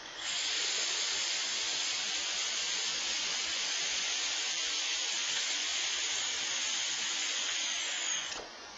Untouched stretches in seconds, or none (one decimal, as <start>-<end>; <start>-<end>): 5.7-7.1